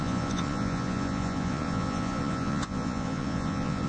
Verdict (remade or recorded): remade